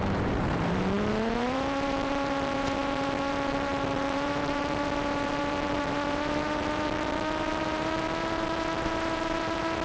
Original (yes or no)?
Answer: no